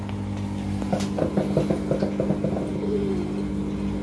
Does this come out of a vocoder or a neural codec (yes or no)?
no